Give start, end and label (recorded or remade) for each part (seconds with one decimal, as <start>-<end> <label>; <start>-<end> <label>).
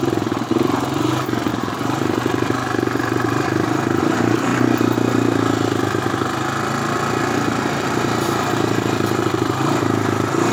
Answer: 0.0-4.5 remade; 4.5-7.5 recorded; 7.5-10.5 remade